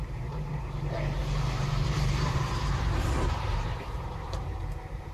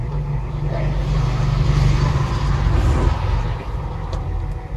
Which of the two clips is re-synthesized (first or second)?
first